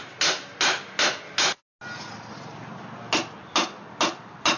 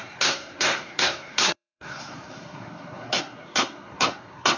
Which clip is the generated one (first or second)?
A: second